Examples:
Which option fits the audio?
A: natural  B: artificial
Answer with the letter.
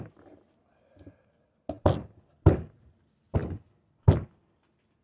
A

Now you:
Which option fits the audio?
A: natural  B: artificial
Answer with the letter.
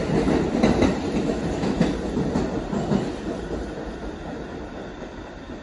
A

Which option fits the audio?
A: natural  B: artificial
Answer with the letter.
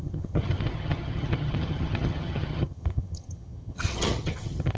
B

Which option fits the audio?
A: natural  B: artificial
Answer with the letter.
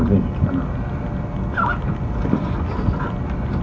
A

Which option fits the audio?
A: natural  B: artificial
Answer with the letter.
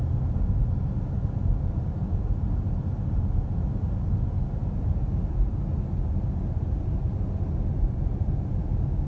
A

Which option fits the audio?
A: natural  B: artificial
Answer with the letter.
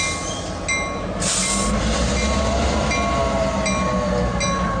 A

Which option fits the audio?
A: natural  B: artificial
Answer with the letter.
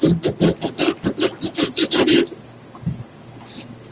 A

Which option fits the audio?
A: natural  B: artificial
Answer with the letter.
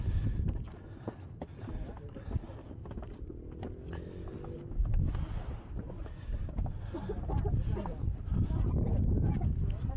A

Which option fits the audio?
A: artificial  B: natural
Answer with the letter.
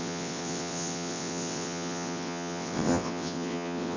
A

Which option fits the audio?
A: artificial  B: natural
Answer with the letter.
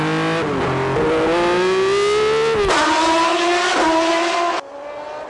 B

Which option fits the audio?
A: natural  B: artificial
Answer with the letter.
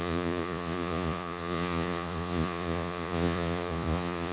B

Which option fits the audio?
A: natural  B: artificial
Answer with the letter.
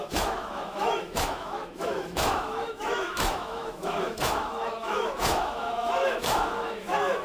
B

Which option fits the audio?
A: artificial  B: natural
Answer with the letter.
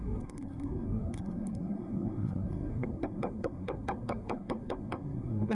A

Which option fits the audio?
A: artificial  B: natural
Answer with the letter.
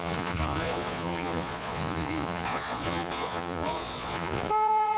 A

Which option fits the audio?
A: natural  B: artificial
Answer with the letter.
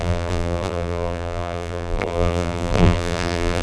B